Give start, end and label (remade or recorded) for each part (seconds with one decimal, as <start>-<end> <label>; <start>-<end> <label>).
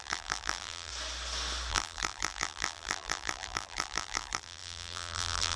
0.0-0.9 remade; 0.9-1.7 recorded; 1.7-5.6 remade